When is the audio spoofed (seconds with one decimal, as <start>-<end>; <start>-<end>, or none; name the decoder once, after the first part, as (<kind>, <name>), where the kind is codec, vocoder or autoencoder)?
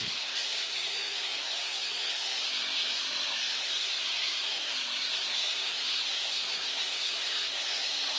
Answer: 0.0-8.2 (codec, SNAC)